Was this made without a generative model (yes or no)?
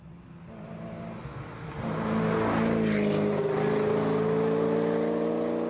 yes